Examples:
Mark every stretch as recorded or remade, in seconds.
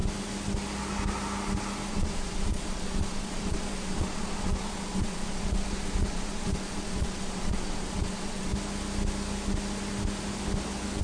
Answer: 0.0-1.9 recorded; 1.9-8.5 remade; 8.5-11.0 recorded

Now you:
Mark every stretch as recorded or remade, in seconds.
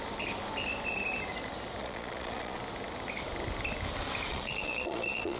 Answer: 0.0-1.8 recorded; 1.8-2.6 remade; 2.6-4.3 recorded; 4.3-5.4 remade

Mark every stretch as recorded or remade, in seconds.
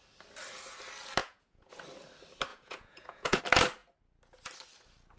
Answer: 0.0-1.2 recorded; 1.2-1.7 remade; 1.7-2.5 recorded; 2.5-3.4 remade; 3.4-5.2 recorded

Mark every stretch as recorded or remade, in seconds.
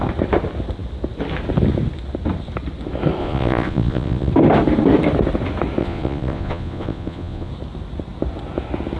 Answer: 0.0-3.2 recorded; 3.2-4.3 remade; 4.3-5.8 recorded; 5.8-7.5 remade; 7.5-9.0 recorded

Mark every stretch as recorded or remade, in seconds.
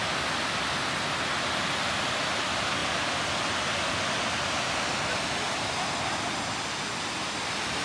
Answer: 0.0-7.8 recorded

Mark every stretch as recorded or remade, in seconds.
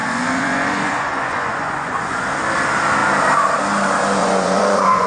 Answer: 0.0-2.2 remade; 2.2-4.2 recorded; 4.2-5.1 remade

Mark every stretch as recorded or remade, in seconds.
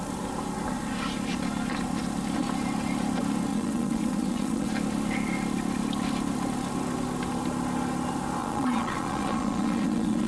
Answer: 0.0-3.5 recorded; 3.5-4.7 remade; 4.7-8.4 recorded; 8.4-10.3 remade